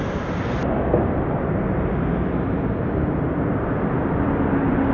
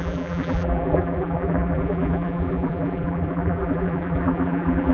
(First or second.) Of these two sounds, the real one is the first